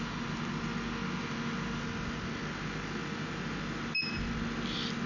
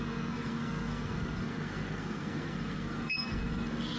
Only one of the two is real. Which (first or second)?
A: first